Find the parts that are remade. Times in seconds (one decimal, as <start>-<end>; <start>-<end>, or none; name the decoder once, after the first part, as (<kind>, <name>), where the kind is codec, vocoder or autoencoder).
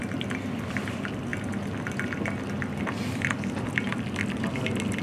none